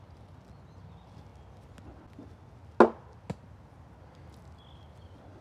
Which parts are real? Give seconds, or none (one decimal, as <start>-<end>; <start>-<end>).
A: 0.0-5.4